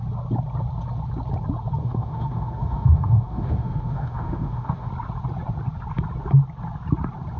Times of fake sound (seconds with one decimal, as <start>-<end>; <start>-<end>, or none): 1.8-4.9